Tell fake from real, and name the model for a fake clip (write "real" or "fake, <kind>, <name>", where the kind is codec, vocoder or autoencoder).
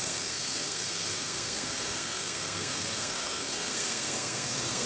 fake, codec, SNAC